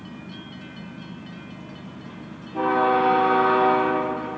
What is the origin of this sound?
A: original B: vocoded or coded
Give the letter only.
A